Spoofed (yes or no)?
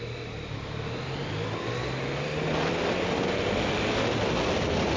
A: no